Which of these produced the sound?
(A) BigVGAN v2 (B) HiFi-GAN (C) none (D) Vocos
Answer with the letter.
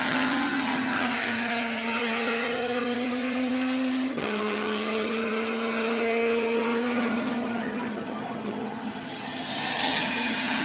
B